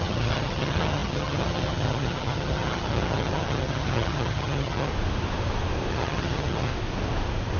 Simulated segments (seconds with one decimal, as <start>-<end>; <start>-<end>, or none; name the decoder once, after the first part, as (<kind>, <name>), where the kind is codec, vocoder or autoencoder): 0.0-4.9 (vocoder, HiFi-GAN); 5.9-6.7